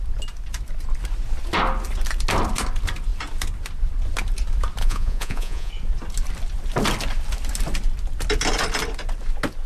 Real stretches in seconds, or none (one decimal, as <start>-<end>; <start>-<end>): 0.0-4.8; 5.7-9.7